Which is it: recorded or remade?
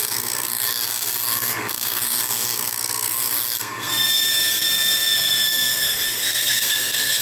remade